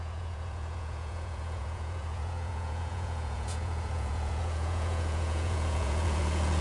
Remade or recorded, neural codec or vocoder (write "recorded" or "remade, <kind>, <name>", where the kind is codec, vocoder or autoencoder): remade, vocoder, Vocos